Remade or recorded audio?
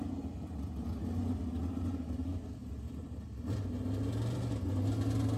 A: recorded